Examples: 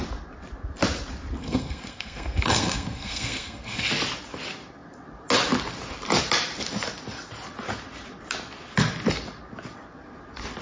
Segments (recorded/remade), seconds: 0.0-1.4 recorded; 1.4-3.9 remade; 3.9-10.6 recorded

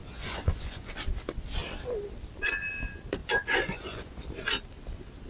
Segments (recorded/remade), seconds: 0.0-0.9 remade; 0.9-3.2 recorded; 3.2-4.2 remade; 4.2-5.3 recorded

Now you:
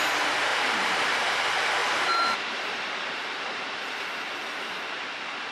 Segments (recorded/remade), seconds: 0.0-0.5 recorded; 0.5-1.4 remade; 1.4-1.8 recorded; 1.8-5.1 remade; 5.1-5.5 recorded

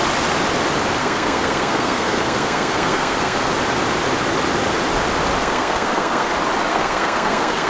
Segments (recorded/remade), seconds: 0.0-1.0 recorded; 1.0-3.5 remade; 3.5-5.4 recorded; 5.4-6.3 remade; 6.3-6.7 recorded; 6.7-7.7 remade

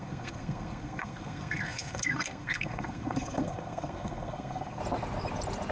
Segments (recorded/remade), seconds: 0.0-4.8 remade; 4.8-5.7 recorded

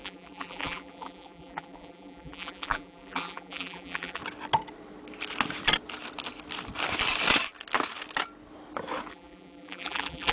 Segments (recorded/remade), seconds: 0.0-4.2 remade; 4.2-9.1 recorded; 9.1-10.3 remade

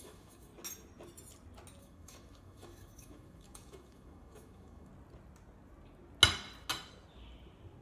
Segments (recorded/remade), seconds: 0.0-0.5 remade; 0.5-1.8 recorded; 1.8-4.9 remade; 4.9-7.8 recorded